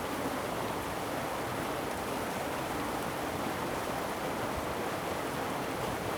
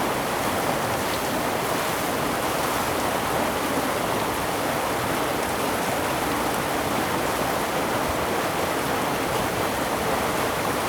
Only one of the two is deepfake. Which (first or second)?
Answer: first